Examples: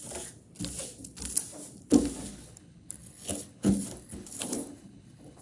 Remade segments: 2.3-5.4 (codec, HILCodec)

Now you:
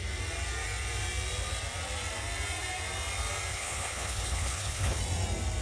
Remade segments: 3.5-5.0 (codec, HILCodec)

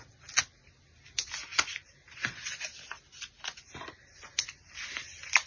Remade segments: none

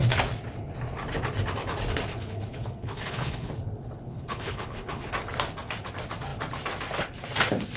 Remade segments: 2.1-3.5 (codec, HILCodec); 4.1-5.1

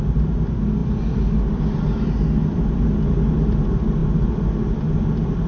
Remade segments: none

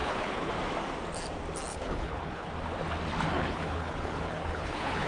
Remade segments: 0.0-0.5 (codec, HILCodec); 1.7-2.5; 3.3-5.1